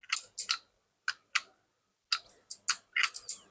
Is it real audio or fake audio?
real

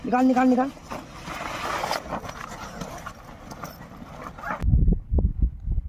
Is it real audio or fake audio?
real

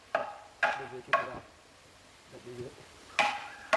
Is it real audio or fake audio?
real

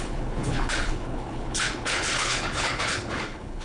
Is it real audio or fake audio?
fake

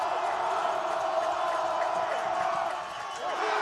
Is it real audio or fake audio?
real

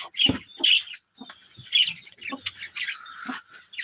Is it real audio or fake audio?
real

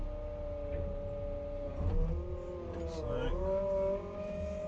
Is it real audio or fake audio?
real